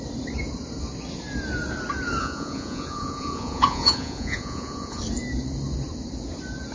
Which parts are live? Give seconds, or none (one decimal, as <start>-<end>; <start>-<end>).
0.0-2.2; 5.0-6.7

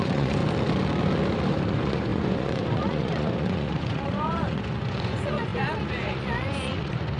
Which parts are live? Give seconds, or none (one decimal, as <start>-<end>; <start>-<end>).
0.4-1.7

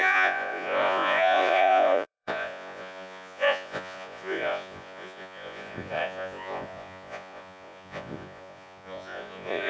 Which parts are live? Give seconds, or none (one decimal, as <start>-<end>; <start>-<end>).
none